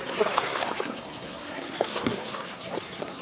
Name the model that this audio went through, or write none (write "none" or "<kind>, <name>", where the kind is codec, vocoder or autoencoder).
codec, SNAC